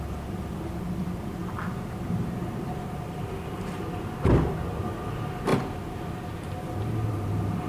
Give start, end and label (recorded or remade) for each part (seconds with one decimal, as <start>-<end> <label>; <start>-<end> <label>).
0.0-7.7 recorded